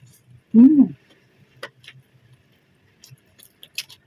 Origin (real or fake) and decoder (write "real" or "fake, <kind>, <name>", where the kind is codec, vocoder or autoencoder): real